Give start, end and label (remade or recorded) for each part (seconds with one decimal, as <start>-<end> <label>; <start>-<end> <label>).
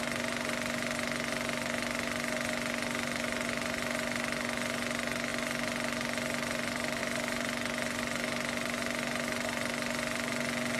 0.0-10.8 recorded